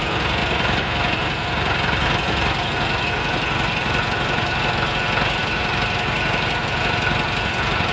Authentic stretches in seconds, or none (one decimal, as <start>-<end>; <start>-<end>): 0.0-7.9